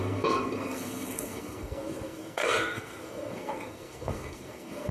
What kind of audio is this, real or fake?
fake